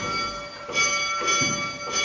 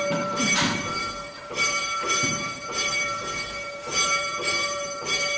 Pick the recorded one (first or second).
first